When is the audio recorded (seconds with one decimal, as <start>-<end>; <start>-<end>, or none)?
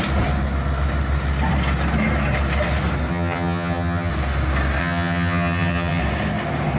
0.0-3.1; 4.1-4.8; 6.0-6.8